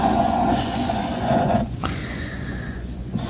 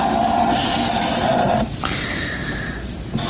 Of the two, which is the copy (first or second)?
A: first